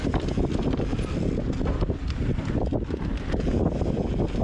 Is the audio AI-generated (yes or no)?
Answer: no